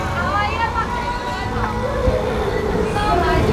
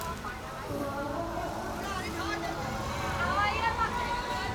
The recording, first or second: first